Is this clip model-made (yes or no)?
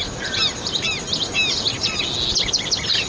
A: no